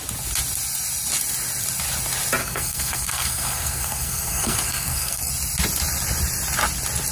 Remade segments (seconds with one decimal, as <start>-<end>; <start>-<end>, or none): 2.4-5.3